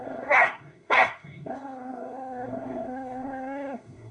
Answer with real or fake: fake